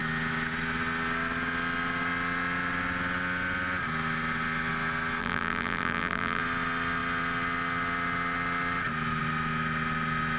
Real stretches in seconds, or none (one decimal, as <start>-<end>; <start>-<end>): 0.0-5.2; 6.4-10.4